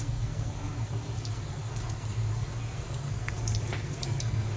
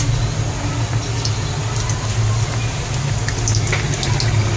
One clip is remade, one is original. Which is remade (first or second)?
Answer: first